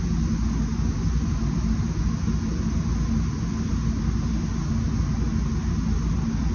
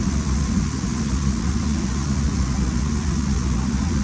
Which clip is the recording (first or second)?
first